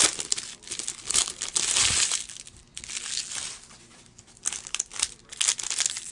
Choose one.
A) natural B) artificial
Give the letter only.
A